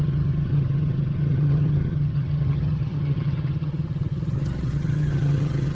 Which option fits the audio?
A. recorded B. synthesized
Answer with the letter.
B